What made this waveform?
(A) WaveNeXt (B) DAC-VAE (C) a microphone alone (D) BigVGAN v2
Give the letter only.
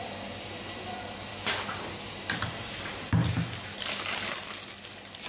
C